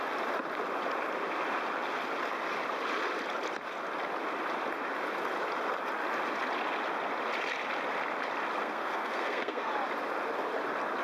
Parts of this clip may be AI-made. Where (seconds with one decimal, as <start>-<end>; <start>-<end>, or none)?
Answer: 8.6-9.7